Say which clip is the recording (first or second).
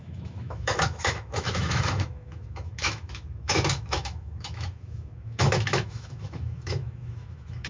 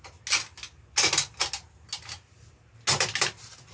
second